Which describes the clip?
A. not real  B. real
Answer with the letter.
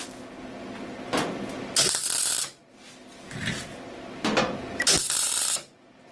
B